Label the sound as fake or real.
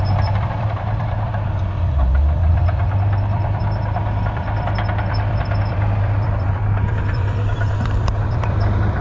fake